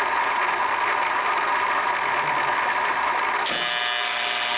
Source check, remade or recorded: recorded